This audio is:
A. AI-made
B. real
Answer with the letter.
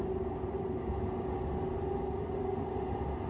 B